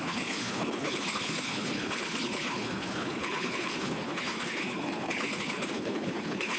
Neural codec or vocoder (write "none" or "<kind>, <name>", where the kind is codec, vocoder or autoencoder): codec, HILCodec